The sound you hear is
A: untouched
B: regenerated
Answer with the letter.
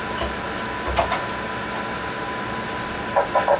A